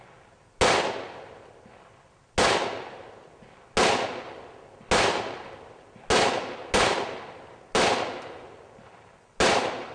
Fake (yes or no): no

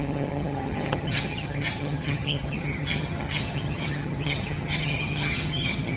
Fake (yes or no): yes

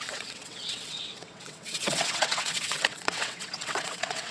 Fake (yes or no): yes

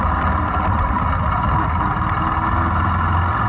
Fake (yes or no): no